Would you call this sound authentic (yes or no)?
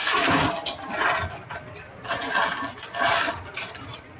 yes